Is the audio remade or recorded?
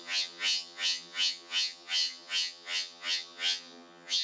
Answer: remade